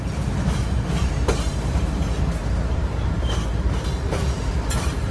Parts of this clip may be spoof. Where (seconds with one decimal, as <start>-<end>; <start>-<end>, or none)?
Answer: 1.5-2.0; 2.4-5.1

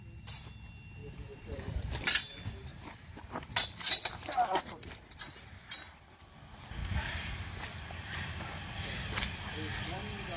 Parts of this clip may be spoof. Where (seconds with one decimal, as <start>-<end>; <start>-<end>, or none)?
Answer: 1.0-1.9; 2.7-3.5; 6.8-8.4

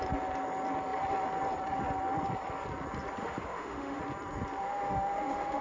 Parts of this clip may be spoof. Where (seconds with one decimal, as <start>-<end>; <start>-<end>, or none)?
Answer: 3.2-4.0; 4.6-5.6